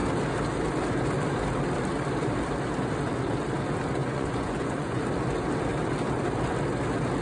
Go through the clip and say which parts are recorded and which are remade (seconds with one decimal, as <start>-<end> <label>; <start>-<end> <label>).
0.0-4.0 recorded; 4.0-5.0 remade; 5.0-7.2 recorded